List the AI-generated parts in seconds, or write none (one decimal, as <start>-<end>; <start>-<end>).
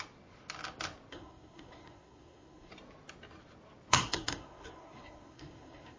1.1-2.7; 3.9-6.0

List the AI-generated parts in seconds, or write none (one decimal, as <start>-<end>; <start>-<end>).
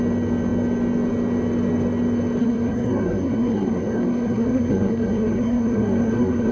2.4-6.5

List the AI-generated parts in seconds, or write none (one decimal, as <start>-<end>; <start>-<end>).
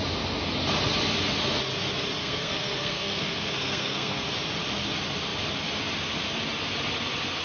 2.2-4.3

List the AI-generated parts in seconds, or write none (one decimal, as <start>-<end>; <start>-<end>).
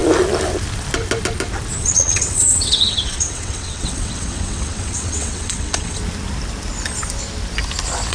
1.8-6.0